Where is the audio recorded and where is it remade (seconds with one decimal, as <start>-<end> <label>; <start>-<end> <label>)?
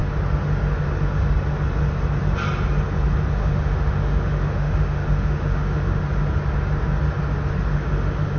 0.0-3.4 recorded; 3.4-6.0 remade; 6.0-7.7 recorded; 7.7-8.4 remade